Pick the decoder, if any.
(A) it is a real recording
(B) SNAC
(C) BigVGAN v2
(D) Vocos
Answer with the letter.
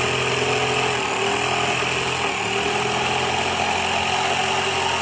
A